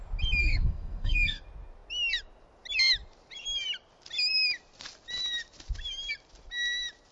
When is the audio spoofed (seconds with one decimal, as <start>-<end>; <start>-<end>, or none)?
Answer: 0.4-1.4